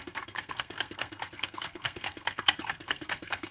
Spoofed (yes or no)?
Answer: yes